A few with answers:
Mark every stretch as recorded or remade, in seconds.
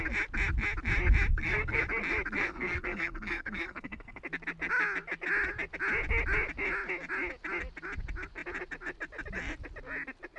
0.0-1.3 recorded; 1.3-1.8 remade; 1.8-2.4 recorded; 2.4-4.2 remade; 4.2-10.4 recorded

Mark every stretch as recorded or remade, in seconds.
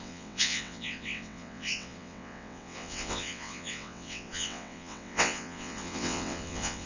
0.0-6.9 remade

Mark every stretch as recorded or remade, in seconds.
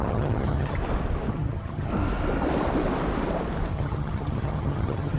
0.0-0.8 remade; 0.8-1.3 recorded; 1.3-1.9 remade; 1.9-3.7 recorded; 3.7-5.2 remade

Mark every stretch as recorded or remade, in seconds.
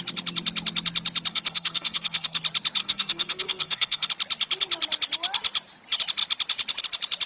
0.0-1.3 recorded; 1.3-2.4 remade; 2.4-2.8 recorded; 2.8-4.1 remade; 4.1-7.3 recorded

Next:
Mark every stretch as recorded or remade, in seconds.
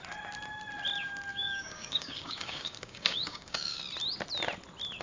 0.0-1.3 recorded; 1.3-3.8 remade; 3.8-5.0 recorded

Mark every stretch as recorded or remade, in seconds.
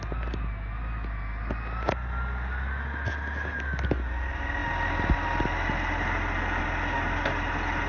0.0-7.9 recorded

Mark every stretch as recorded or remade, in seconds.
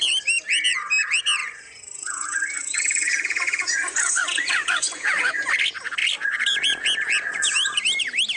0.0-1.4 recorded; 1.4-5.3 remade; 5.3-8.4 recorded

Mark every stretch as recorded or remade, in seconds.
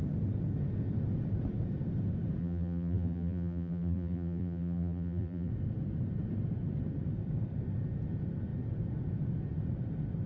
0.0-2.4 recorded; 2.4-5.5 remade; 5.5-10.3 recorded